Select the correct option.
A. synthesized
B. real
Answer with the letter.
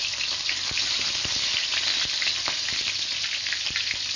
B